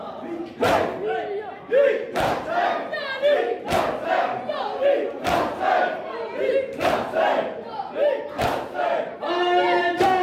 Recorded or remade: recorded